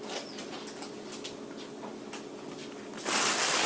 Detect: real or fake real